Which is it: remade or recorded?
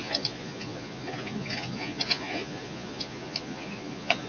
remade